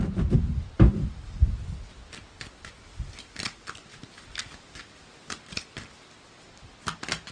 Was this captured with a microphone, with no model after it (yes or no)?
yes